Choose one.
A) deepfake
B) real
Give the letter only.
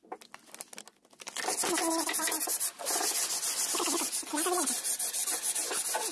B